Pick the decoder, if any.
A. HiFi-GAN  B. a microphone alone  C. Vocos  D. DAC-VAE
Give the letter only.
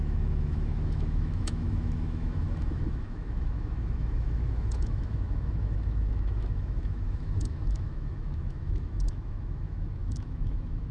D